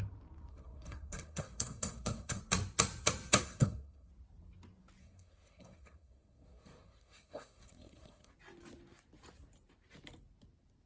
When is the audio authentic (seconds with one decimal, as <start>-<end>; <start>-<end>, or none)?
0.0-0.5; 2.4-3.4; 4.1-5.0; 8.3-10.9